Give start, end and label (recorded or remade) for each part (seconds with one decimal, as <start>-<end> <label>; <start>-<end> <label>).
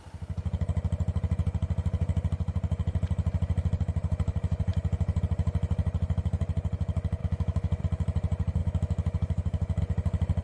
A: 0.0-7.2 recorded; 7.2-7.8 remade; 7.8-8.6 recorded; 8.6-9.8 remade; 9.8-10.4 recorded